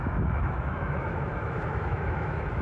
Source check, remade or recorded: remade